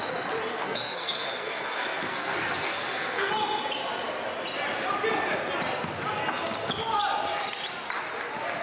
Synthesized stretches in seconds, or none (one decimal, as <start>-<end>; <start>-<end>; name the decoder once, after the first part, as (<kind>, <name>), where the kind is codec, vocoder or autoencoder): 0.5-3.3 (codec, SNAC)